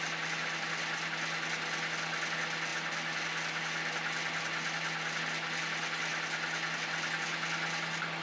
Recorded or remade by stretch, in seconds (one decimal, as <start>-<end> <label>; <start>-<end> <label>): 0.0-8.2 recorded